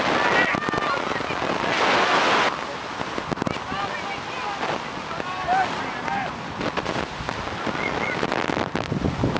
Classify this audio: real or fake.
real